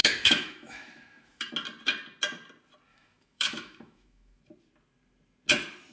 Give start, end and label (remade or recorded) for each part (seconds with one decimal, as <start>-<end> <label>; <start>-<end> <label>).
0.0-1.5 remade; 1.5-2.9 recorded; 2.9-4.4 remade; 4.4-5.9 recorded